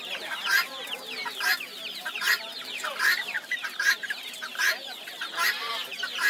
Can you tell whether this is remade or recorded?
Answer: remade